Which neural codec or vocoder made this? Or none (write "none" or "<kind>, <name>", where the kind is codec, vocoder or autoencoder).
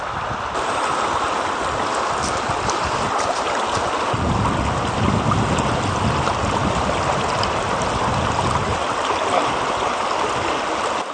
none